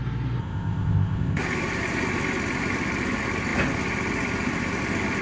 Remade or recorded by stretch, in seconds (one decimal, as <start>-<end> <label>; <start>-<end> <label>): 0.0-0.4 recorded; 0.4-1.4 remade; 1.4-5.2 recorded